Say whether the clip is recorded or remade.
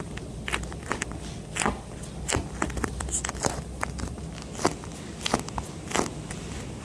recorded